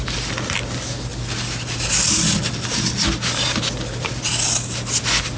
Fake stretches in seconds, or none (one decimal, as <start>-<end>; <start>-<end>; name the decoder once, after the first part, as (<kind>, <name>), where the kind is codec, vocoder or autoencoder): none